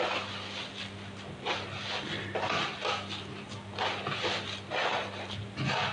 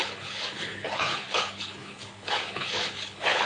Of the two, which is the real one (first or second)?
first